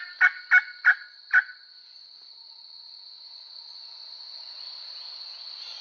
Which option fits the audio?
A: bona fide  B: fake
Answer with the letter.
A